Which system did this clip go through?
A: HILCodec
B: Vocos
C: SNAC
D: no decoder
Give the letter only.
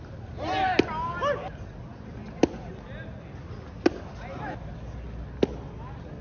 D